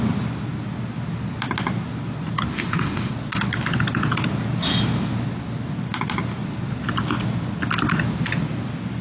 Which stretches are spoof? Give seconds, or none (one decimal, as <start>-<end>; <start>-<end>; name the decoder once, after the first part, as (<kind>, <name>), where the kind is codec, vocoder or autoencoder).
2.5-3.1 (autoencoder, DAC-VAE)